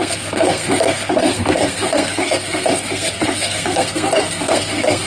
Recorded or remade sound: remade